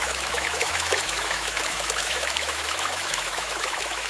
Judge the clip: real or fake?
fake